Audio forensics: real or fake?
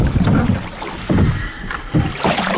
fake